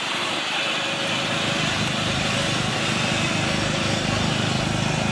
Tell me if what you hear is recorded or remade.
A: recorded